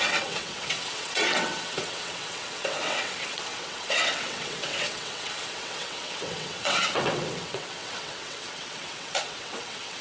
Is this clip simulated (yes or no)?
yes